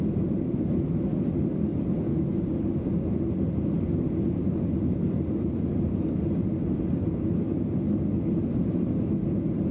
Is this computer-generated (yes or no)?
no